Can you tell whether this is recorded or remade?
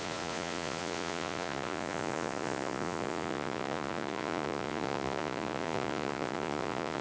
remade